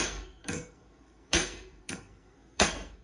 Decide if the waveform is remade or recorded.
remade